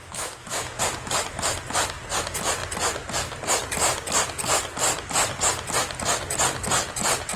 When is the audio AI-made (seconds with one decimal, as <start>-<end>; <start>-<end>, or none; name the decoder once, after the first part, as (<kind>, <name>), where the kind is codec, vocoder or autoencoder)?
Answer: 0.0-0.8 (autoencoder, DAC-VAE)